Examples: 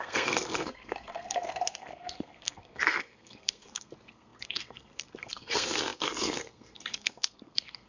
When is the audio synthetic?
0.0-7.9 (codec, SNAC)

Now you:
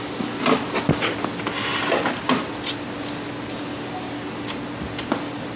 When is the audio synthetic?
none

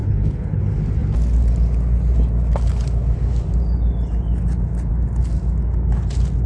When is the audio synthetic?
0.0-0.6 (codec, HILCodec)

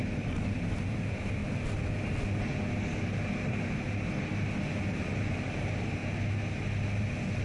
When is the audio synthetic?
0.0-1.4 (vocoder, BigVGAN v2); 4.8-6.0; 7.0-7.4

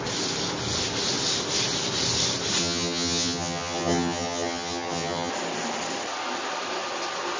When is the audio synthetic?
2.6-5.3 (vocoder, HiFi-GAN)

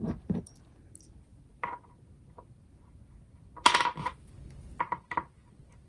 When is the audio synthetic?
none

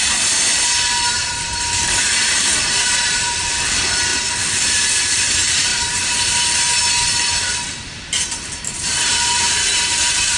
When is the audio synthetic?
0.0-5.7 (vocoder, BigVGAN v2); 8.7-10.4

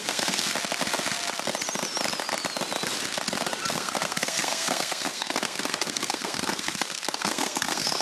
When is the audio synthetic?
0.0-0.5 (codec, SNAC); 3.7-8.0